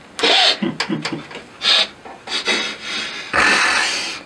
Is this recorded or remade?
recorded